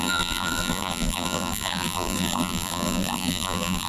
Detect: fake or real fake